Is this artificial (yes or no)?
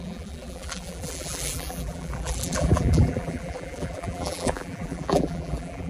yes